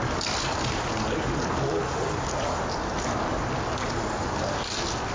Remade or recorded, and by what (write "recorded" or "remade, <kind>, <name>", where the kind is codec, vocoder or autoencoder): recorded